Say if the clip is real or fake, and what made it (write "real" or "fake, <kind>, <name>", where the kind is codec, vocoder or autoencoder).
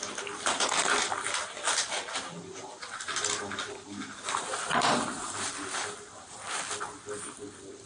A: real